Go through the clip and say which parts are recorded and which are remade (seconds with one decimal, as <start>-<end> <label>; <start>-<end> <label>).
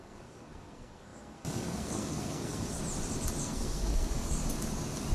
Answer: 0.0-2.8 remade; 2.8-3.4 recorded; 3.4-4.4 remade; 4.4-5.1 recorded